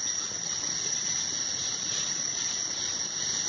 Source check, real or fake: real